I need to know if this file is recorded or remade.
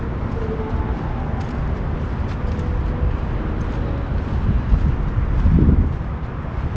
recorded